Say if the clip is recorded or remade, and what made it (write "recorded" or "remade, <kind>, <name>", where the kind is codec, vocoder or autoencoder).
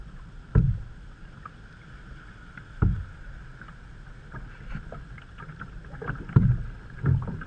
recorded